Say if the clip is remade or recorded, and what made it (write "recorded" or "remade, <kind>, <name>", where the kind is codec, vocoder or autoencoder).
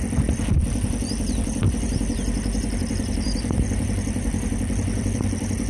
remade, vocoder, BigVGAN v2